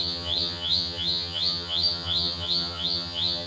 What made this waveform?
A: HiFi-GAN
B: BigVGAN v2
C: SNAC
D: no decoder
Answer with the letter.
A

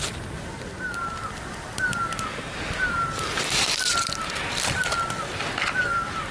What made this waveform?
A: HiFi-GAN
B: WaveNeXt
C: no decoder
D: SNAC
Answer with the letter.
C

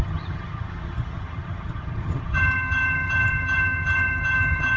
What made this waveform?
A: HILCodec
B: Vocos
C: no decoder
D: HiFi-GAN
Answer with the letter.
D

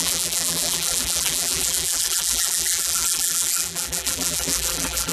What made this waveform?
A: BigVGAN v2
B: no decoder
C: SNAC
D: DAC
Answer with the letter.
A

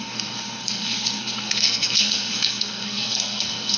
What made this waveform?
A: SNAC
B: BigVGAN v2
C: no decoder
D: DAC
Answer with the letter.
A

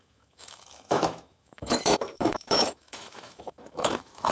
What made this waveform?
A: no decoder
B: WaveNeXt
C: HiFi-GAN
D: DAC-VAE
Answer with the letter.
D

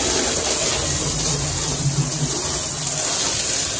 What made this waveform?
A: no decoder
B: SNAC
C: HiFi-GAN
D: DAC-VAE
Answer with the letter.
A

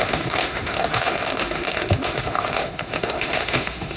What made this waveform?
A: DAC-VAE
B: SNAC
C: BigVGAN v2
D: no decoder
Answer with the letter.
A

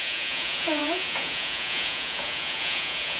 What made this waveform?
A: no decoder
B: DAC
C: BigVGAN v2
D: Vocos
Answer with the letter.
D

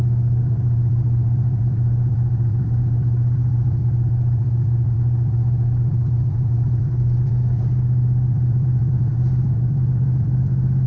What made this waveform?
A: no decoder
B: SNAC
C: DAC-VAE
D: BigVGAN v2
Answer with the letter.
D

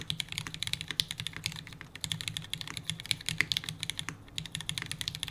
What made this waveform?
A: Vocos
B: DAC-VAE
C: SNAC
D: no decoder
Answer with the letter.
D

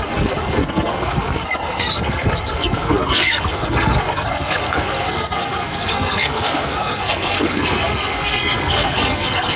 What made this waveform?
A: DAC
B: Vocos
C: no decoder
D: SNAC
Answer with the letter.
D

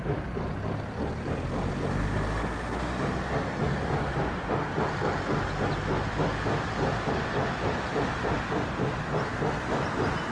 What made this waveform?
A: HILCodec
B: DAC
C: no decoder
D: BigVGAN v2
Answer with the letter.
C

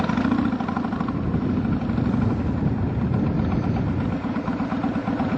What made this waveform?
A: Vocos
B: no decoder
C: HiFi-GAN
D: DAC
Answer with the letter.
B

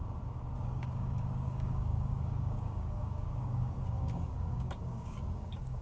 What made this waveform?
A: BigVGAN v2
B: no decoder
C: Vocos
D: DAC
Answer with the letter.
D